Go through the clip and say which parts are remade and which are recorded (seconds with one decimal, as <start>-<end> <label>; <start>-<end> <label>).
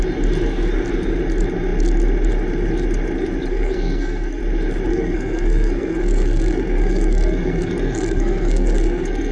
0.0-3.5 recorded; 3.5-4.4 remade; 4.4-4.9 recorded; 4.9-9.3 remade